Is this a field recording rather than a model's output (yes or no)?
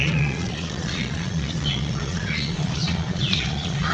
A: no